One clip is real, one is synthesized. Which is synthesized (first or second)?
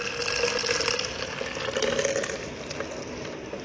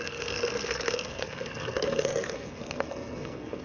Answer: second